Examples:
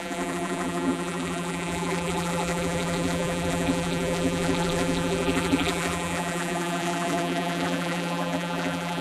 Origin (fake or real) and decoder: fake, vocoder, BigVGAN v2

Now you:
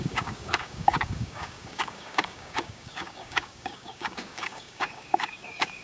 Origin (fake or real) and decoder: fake, codec, DAC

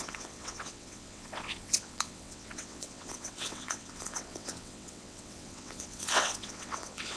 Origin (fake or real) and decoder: fake, vocoder, WaveNeXt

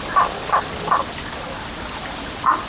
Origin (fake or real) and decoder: real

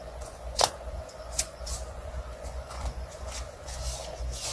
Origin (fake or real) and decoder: fake, vocoder, Vocos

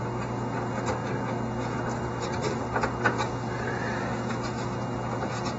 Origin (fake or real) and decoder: real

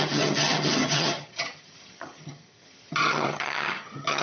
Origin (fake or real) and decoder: fake, vocoder, HiFi-GAN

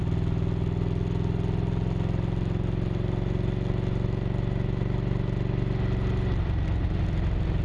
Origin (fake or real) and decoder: real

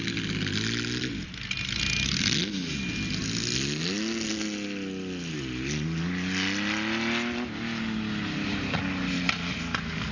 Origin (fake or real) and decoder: real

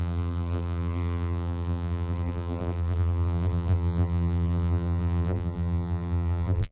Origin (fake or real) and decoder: fake, vocoder, BigVGAN v2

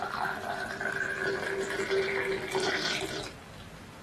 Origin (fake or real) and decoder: real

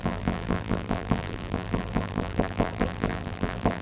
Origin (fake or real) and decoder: fake, vocoder, BigVGAN v2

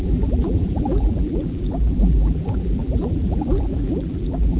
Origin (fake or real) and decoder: fake, vocoder, BigVGAN v2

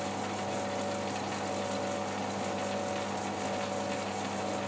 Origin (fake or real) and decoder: real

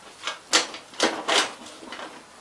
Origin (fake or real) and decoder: real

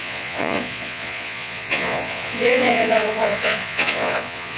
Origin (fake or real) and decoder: fake, vocoder, Vocos